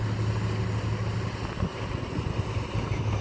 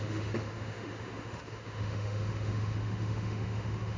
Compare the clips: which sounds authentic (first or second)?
first